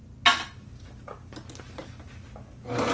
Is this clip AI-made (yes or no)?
no